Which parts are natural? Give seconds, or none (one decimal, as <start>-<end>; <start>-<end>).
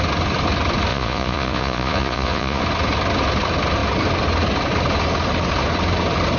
0.0-0.9; 2.6-6.4